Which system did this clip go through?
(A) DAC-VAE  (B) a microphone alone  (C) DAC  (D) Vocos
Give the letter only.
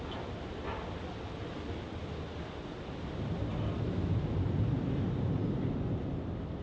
B